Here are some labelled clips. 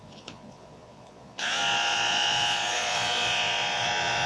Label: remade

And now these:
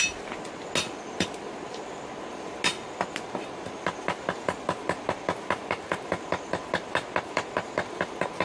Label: recorded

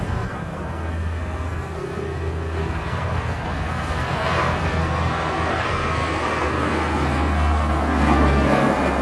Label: remade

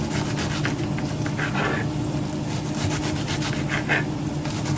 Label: recorded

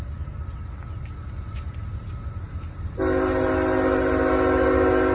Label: recorded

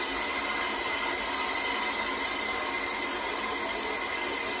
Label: recorded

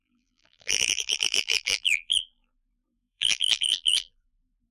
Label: remade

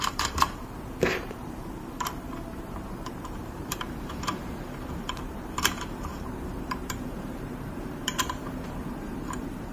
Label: remade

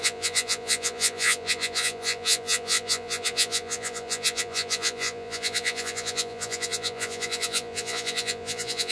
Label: remade